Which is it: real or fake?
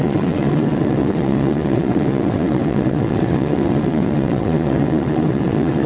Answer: fake